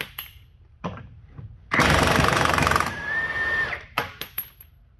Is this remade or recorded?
remade